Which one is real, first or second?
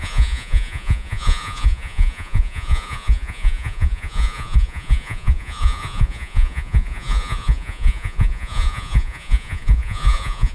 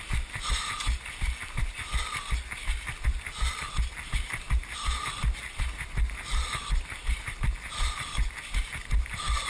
second